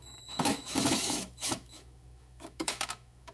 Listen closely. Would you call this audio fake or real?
fake